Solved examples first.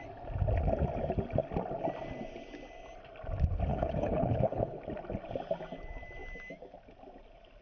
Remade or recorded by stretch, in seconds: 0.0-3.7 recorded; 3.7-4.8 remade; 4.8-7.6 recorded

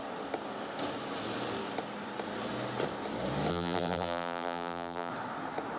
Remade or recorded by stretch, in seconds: 0.0-3.5 recorded; 3.5-5.1 remade; 5.1-5.8 recorded

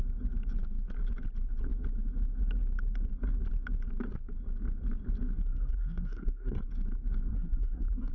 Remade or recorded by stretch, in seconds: 0.0-5.4 recorded; 5.4-6.7 remade; 6.7-7.3 recorded; 7.3-8.1 remade